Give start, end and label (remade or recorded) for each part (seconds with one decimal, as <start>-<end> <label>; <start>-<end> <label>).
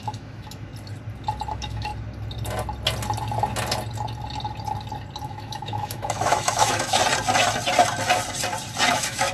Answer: 0.0-0.7 remade; 0.7-1.5 recorded; 1.5-1.9 remade; 1.9-5.2 recorded; 5.2-7.0 remade; 7.0-8.9 recorded; 8.9-9.3 remade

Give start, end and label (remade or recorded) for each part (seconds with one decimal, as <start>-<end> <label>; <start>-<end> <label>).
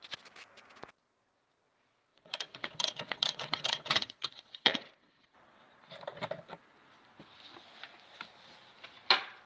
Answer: 0.0-2.1 recorded; 2.1-5.6 remade; 5.6-9.5 recorded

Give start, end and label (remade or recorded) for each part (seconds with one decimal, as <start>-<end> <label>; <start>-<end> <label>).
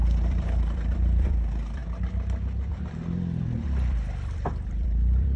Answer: 0.0-1.8 remade; 1.8-2.7 recorded; 2.7-5.4 remade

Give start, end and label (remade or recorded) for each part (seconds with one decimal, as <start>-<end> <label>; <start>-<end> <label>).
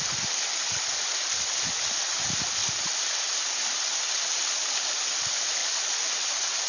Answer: 0.0-6.7 recorded